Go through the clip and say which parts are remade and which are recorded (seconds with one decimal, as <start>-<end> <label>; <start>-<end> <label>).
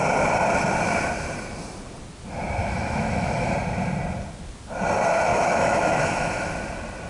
0.0-2.6 recorded; 2.6-3.5 remade; 3.5-5.3 recorded; 5.3-6.5 remade; 6.5-7.1 recorded